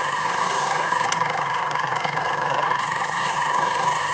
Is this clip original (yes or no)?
no